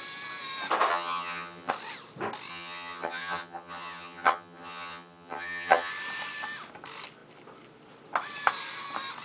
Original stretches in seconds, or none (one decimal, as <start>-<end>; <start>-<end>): 0.0-0.9; 1.7-2.5; 5.9-9.2